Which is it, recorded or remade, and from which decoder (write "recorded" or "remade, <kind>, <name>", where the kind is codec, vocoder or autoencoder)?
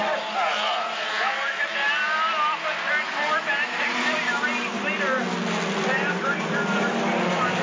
recorded